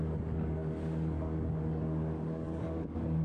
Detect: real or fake fake